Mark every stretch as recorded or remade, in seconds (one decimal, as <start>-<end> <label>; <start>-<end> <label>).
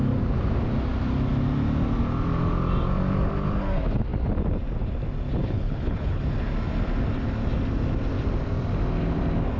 0.0-5.4 recorded; 5.4-6.2 remade; 6.2-9.6 recorded